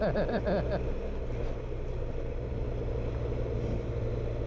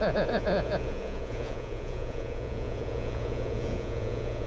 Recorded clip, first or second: first